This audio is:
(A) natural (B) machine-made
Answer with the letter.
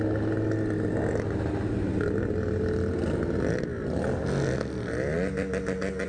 A